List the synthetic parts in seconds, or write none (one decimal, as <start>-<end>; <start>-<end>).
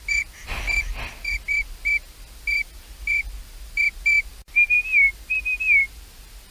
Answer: 4.3-6.0